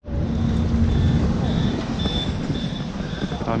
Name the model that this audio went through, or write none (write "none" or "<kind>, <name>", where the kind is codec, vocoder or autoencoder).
none